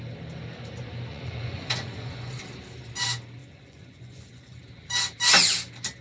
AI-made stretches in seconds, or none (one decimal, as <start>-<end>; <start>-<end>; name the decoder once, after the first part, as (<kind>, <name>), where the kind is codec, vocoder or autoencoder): 1.1-2.3 (vocoder, Vocos); 3.4-4.6